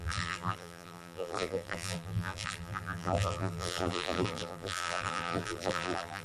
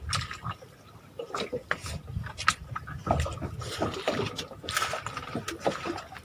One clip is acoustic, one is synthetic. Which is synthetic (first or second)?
first